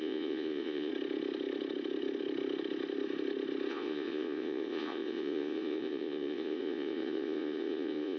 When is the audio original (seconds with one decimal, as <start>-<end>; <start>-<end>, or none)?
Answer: 0.9-3.7